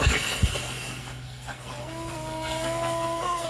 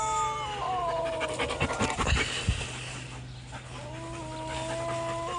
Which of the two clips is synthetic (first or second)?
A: first